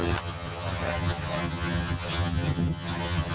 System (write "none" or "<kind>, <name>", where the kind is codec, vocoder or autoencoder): vocoder, HiFi-GAN